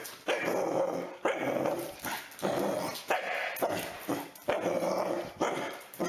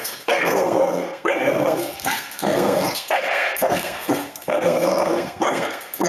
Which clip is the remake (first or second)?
second